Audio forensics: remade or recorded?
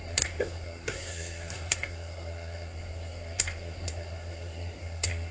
remade